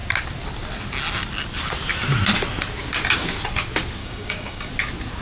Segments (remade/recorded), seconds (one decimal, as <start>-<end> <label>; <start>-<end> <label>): 0.0-4.0 recorded; 4.0-4.7 remade; 4.7-5.2 recorded